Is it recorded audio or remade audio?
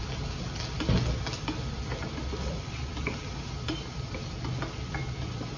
recorded